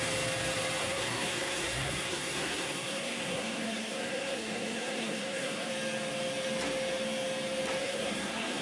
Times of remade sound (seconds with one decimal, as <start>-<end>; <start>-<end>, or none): 0.8-5.7; 7.8-8.6